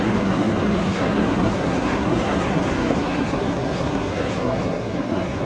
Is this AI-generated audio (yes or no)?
yes